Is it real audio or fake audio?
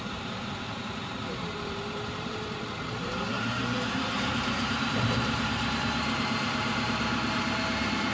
fake